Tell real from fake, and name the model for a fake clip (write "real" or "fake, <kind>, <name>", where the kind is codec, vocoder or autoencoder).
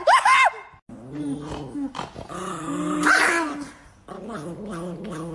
real